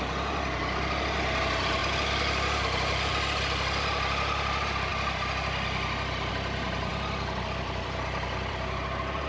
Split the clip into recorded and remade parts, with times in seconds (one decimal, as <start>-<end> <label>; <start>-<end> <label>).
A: 0.0-1.8 recorded; 1.8-3.1 remade; 3.1-9.3 recorded